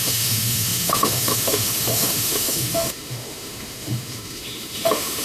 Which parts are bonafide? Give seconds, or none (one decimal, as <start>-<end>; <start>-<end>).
none